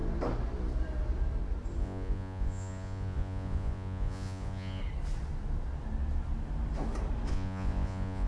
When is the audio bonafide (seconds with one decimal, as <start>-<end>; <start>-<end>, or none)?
0.0-1.8; 4.8-7.3